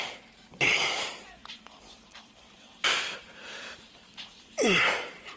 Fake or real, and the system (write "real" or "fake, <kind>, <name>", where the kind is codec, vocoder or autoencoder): fake, vocoder, BigVGAN v2